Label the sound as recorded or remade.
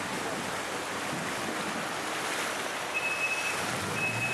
recorded